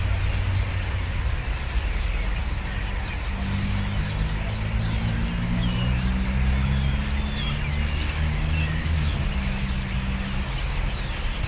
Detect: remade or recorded recorded